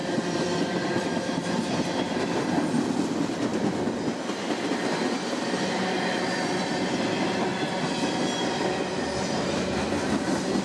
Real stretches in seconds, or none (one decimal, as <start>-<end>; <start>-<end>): 0.0-10.6